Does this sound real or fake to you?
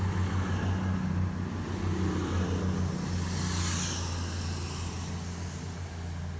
real